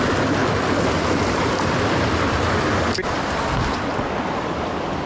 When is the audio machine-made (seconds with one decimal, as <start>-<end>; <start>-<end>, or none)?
none